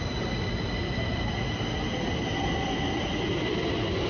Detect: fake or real real